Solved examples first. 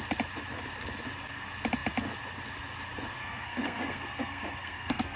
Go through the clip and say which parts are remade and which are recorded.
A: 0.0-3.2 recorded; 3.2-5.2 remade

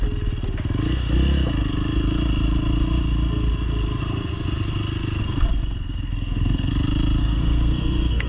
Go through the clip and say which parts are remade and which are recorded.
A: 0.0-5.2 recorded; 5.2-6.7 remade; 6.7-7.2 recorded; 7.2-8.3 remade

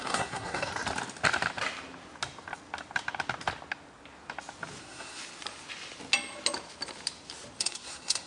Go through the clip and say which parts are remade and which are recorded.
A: 0.0-0.7 remade; 0.7-4.8 recorded; 4.8-5.2 remade; 5.2-7.6 recorded; 7.6-8.3 remade

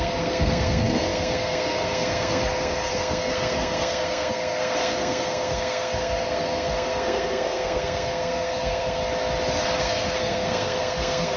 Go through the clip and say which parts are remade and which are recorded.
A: 0.0-9.0 remade; 9.0-9.8 recorded; 9.8-11.4 remade

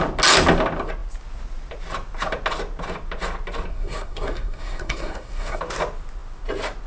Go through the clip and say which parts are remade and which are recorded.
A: 0.0-3.7 recorded; 3.7-5.6 remade; 5.6-6.9 recorded